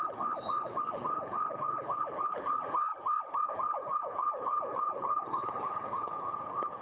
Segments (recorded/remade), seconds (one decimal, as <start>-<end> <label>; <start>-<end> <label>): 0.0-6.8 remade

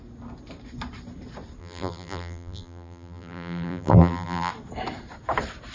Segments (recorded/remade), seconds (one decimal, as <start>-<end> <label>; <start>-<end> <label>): 0.0-1.6 recorded; 1.6-4.5 remade; 4.5-5.7 recorded

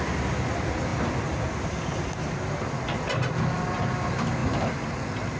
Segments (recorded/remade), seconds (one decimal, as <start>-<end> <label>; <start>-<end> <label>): 0.0-5.4 recorded